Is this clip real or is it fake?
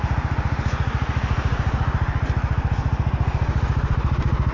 real